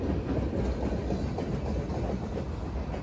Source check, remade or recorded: recorded